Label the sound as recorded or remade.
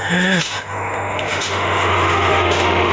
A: remade